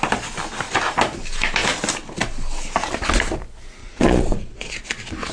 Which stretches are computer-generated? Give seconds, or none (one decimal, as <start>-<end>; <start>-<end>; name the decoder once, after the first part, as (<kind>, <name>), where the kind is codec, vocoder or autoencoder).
3.8-4.7 (vocoder, Vocos)

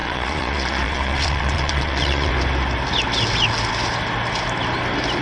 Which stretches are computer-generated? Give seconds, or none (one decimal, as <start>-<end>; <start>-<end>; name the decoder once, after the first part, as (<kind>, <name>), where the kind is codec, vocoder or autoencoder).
0.0-2.3 (vocoder, Vocos)

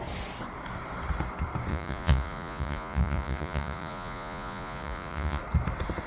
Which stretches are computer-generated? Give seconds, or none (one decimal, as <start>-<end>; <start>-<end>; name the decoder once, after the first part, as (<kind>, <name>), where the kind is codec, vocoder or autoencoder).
1.7-5.4 (vocoder, Vocos)

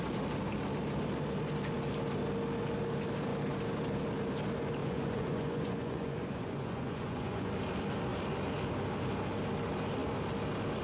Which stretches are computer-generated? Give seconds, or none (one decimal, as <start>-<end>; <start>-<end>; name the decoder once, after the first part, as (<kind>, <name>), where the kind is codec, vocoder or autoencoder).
4.8-7.5 (vocoder, Vocos)